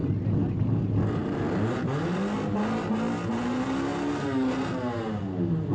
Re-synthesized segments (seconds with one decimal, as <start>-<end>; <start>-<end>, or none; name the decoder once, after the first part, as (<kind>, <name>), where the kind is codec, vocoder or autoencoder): none